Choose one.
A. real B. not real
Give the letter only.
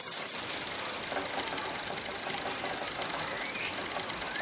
A